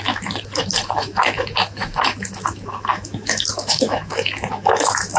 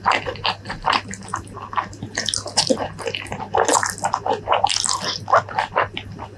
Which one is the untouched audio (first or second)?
second